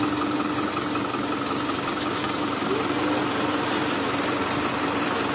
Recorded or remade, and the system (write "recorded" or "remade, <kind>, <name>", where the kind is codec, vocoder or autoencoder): recorded